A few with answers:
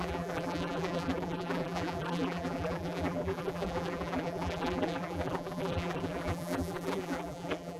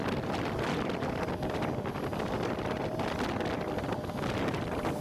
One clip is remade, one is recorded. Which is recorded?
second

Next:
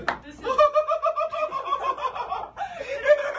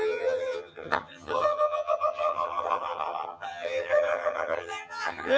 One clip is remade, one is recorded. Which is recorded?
first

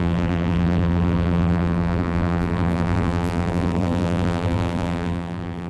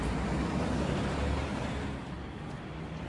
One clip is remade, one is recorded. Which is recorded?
second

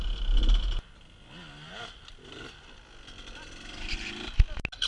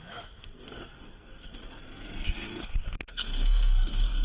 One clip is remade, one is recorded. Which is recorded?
first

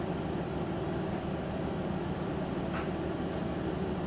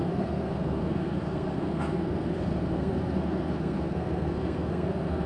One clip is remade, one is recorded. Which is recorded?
first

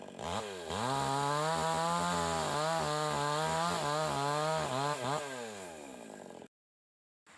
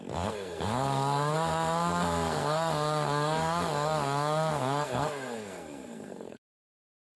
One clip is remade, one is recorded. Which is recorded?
first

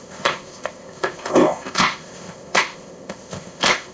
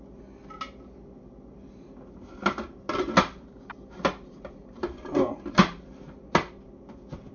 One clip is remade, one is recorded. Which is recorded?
second